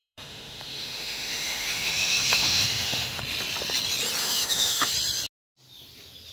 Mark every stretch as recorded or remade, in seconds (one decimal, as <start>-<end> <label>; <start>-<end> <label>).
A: 0.0-3.2 remade; 3.2-4.2 recorded; 4.2-4.9 remade; 4.9-6.3 recorded